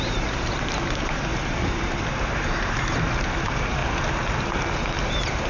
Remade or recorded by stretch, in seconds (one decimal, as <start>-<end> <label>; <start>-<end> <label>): 0.0-3.8 remade; 3.8-5.1 recorded; 5.1-5.5 remade